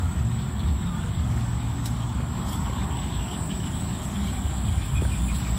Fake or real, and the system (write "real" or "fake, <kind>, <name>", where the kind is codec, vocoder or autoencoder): fake, codec, DAC